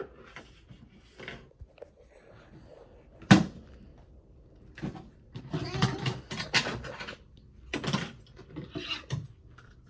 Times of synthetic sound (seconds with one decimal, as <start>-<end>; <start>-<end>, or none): none